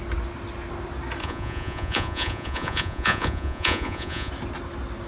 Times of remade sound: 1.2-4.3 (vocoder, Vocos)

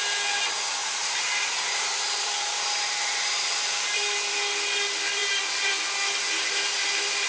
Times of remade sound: 0.8-4.3 (vocoder, BigVGAN v2)